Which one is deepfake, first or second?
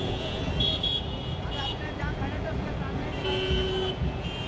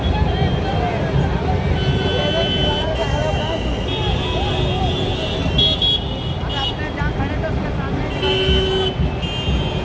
first